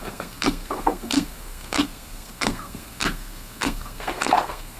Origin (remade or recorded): remade